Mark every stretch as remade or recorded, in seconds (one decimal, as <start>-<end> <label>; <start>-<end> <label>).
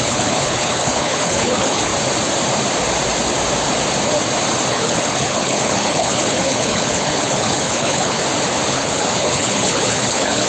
0.0-1.9 remade; 1.9-4.7 recorded; 4.7-8.2 remade; 8.2-8.7 recorded; 8.7-10.5 remade